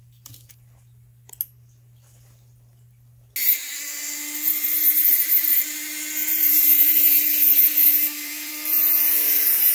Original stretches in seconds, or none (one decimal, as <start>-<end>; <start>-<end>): 0.0-6.2